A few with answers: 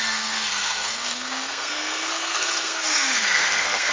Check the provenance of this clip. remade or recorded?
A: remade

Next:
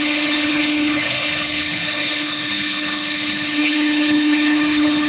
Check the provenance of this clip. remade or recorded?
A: remade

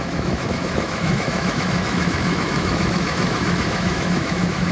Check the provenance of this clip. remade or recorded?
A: remade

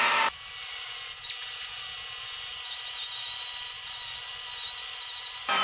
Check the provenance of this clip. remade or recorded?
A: recorded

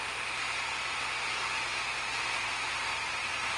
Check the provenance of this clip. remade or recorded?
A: recorded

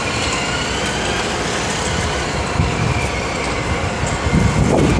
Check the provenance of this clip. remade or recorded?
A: recorded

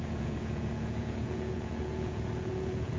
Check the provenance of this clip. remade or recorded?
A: remade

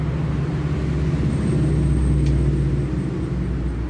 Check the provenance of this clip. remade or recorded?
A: recorded